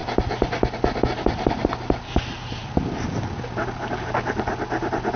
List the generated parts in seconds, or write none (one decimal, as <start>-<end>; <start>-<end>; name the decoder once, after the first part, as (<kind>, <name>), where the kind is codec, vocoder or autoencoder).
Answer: none